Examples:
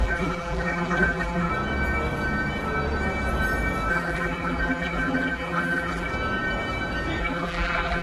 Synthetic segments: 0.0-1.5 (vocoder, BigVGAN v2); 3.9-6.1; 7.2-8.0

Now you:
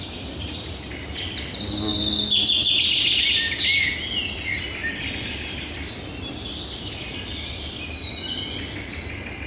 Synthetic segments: 7.3-8.1 (vocoder, BigVGAN v2)

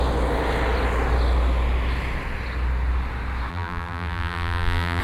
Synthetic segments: 3.5-5.0 (vocoder, BigVGAN v2)

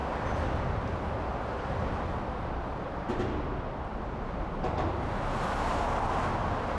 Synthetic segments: none

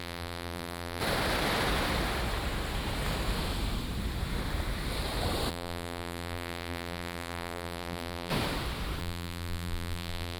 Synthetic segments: 0.0-1.0 (vocoder, BigVGAN v2); 5.5-8.3; 9.0-10.4